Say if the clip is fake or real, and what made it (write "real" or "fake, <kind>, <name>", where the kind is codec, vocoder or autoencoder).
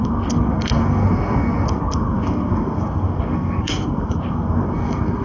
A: fake, codec, SNAC